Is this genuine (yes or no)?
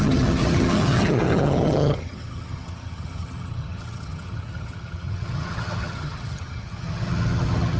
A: no